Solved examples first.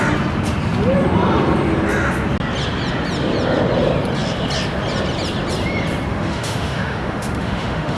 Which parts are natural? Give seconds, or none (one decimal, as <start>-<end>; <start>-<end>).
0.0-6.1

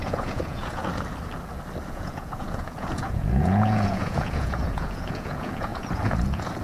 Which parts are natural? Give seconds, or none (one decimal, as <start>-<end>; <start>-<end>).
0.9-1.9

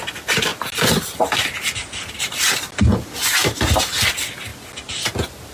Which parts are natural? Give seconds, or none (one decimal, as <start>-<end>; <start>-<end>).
0.0-5.5

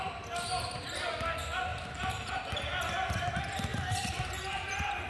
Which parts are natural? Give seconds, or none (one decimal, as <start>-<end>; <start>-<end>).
0.0-1.7; 2.4-3.7

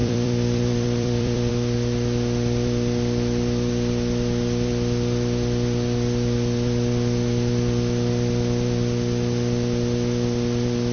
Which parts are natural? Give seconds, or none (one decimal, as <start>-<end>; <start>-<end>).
1.5-10.9

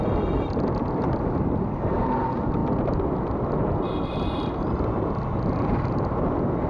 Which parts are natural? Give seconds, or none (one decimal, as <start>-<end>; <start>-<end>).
0.0-6.7

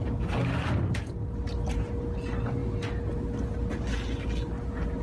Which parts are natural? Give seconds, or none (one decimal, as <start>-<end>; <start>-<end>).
0.0-5.0

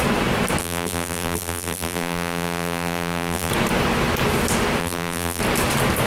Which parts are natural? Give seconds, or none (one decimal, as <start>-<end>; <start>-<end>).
0.0-0.6; 3.5-4.8; 5.4-6.1